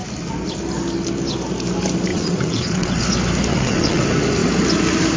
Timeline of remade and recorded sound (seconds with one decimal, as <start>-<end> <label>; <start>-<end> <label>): 0.0-2.1 recorded; 2.1-3.0 remade; 3.0-3.5 recorded; 3.5-4.0 remade; 4.0-5.2 recorded